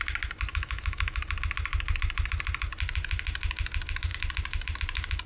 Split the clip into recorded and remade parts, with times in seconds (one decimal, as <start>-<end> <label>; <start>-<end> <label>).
0.0-0.5 recorded; 0.5-1.2 remade; 1.2-5.3 recorded